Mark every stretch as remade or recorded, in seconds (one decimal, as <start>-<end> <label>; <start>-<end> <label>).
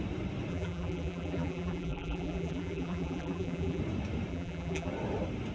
0.0-0.5 recorded; 0.5-3.8 remade; 3.8-4.3 recorded; 4.3-4.9 remade; 4.9-5.5 recorded